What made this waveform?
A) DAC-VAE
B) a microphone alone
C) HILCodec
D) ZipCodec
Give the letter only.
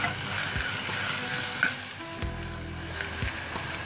B